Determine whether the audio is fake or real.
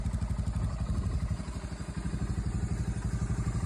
real